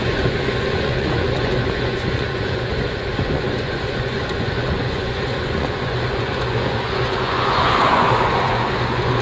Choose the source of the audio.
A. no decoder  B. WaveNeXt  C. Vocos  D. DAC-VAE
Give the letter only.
C